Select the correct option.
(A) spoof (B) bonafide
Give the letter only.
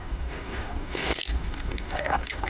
A